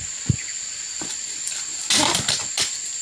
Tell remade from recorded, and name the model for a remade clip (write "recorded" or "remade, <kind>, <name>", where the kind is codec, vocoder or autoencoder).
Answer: recorded